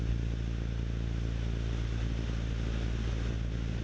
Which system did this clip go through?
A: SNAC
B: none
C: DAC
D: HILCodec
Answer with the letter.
B